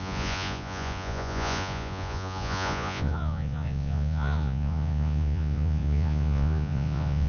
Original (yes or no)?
no